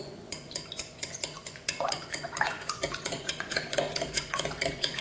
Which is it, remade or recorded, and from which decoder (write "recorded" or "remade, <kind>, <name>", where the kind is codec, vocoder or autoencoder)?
remade, vocoder, Vocos